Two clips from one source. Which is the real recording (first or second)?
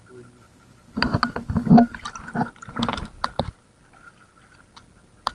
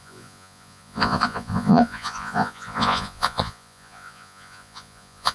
first